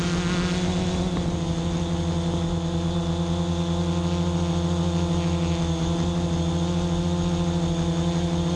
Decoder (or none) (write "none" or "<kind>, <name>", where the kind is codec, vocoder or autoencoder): none